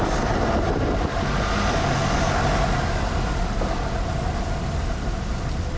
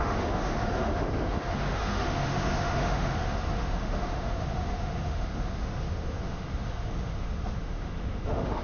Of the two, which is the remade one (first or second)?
second